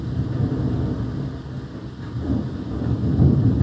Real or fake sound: real